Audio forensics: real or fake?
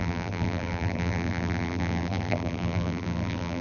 fake